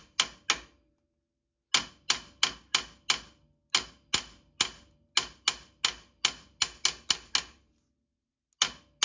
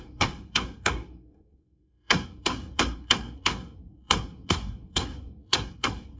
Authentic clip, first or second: first